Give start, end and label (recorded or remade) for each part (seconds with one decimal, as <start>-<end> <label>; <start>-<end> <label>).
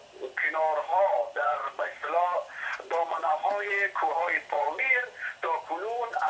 0.0-0.9 recorded; 0.9-3.7 remade; 3.7-4.2 recorded; 4.2-4.8 remade; 4.8-6.3 recorded